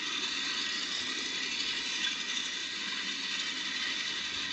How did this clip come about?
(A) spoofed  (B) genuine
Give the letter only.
B